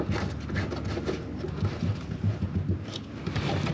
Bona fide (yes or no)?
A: yes